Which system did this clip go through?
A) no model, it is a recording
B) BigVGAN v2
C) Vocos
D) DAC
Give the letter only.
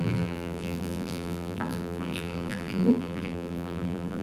B